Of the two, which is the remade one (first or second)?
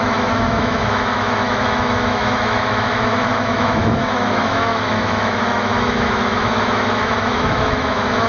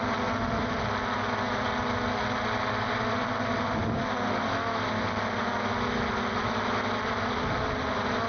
first